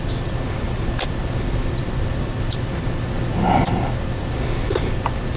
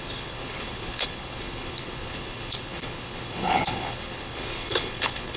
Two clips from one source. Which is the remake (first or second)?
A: second